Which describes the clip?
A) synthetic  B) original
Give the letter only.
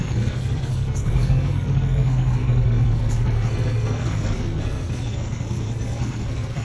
A